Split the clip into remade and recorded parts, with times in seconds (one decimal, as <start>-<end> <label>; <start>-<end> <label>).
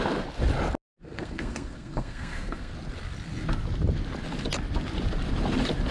0.0-1.0 recorded; 1.0-2.7 remade; 2.7-5.9 recorded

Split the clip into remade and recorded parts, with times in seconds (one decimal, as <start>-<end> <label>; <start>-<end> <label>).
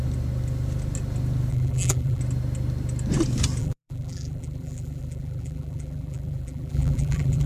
0.0-1.5 recorded; 1.5-2.2 remade; 2.2-3.6 recorded; 3.6-7.5 remade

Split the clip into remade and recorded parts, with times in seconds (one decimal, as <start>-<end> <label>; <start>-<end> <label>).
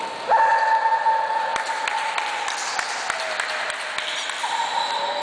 0.0-5.2 recorded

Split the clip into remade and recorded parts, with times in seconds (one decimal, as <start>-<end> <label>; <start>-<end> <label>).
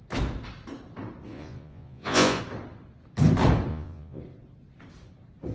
0.0-1.3 recorded; 1.3-2.4 remade; 2.4-3.7 recorded; 3.7-4.2 remade; 4.2-5.5 recorded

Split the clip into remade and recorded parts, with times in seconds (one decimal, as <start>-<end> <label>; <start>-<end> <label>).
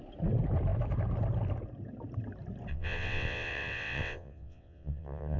0.0-2.7 recorded; 2.7-5.4 remade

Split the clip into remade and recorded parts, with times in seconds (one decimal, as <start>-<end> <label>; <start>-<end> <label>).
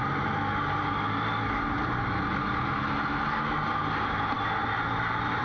0.0-5.4 recorded